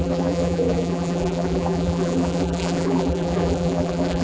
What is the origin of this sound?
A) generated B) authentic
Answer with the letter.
A